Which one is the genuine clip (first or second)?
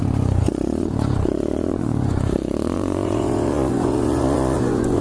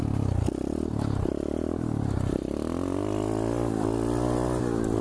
second